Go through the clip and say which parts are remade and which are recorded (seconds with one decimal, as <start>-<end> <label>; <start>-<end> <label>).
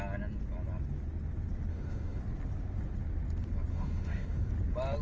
0.0-1.7 recorded; 1.7-2.2 remade; 2.2-3.7 recorded; 3.7-4.5 remade; 4.5-5.0 recorded